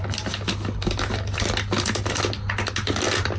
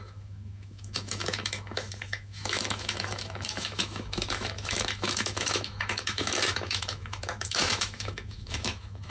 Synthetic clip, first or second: second